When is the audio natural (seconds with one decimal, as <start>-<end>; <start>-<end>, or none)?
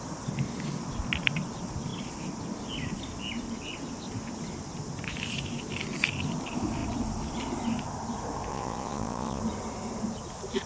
0.0-8.5; 9.4-10.7